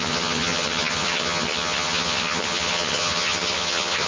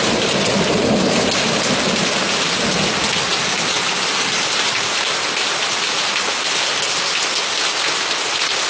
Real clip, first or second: second